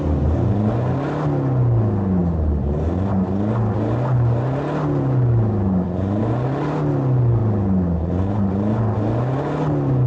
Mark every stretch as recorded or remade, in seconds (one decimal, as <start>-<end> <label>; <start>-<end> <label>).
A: 0.0-10.1 recorded